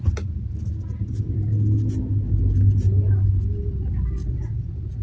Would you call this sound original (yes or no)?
yes